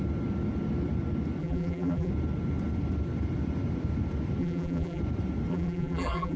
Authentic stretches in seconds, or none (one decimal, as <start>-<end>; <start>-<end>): 0.0-1.4; 2.1-4.4; 5.0-5.5